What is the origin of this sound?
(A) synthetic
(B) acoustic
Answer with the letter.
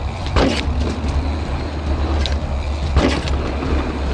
B